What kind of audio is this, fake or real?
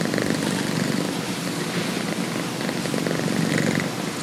real